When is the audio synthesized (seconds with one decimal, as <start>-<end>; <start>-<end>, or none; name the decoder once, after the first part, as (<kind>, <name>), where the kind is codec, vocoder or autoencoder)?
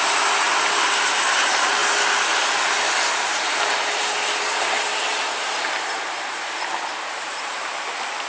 none